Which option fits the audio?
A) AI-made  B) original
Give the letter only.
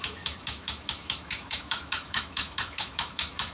A